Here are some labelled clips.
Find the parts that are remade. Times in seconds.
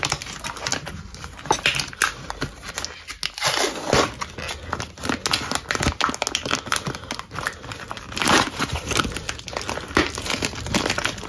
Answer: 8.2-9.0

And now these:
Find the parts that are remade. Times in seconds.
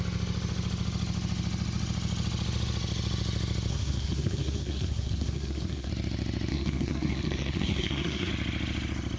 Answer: 3.7-5.9; 6.5-8.3